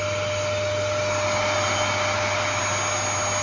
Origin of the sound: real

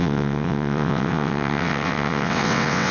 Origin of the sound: fake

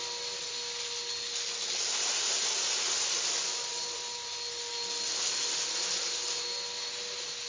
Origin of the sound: real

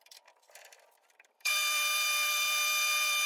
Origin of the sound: fake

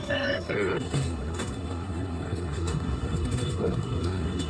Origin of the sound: fake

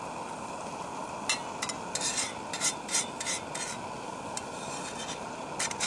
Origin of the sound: real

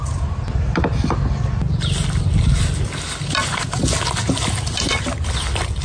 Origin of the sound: real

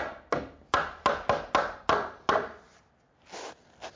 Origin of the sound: real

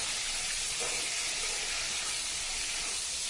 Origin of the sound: real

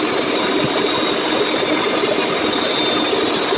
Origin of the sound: real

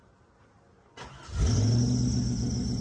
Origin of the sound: real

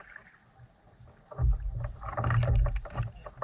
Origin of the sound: real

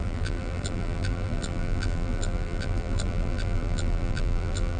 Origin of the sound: fake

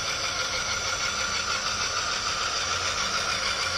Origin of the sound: real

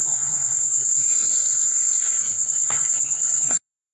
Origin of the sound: fake